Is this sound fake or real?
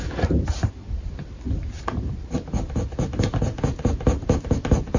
real